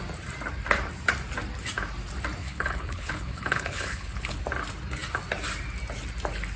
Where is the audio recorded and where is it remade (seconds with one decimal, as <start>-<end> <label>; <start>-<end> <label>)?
0.0-2.4 recorded; 2.4-4.4 remade; 4.4-6.6 recorded